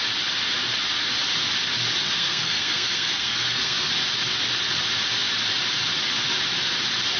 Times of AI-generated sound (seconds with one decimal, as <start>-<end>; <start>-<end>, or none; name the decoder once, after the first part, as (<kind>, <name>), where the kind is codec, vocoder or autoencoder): 2.0-3.9 (codec, SNAC)